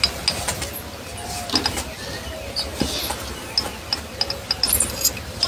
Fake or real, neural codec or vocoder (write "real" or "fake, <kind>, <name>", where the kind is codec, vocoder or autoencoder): real